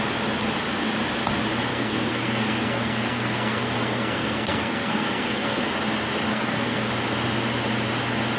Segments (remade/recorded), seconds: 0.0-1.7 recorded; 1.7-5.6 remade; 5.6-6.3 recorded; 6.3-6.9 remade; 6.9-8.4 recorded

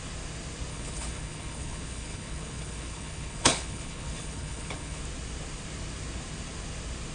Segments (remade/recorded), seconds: 0.0-0.7 recorded; 0.7-5.0 remade; 5.0-7.1 recorded

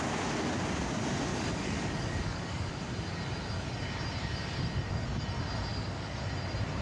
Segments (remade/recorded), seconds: 0.0-1.3 recorded; 1.3-2.7 remade; 2.7-5.7 recorded; 5.7-6.2 remade; 6.2-6.8 recorded

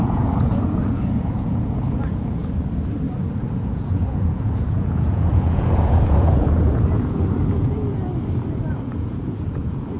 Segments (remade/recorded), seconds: 0.0-2.4 remade; 2.4-3.3 recorded; 3.3-8.1 remade; 8.1-8.7 recorded; 8.7-10.0 remade

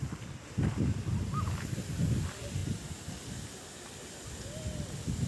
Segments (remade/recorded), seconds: 0.0-5.3 recorded

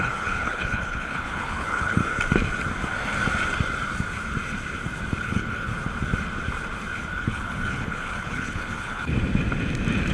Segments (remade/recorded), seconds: 0.0-2.0 remade; 2.0-5.2 recorded; 5.2-5.7 remade; 5.7-7.1 recorded; 7.1-9.1 remade; 9.1-10.1 recorded